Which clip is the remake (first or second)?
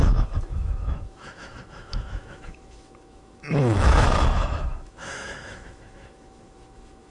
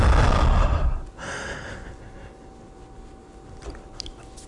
first